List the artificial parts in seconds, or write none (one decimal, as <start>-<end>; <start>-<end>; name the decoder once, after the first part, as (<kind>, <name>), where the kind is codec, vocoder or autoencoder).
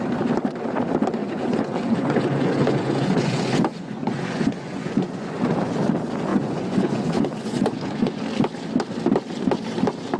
1.2-5.4 (vocoder, Vocos); 6.3-8.2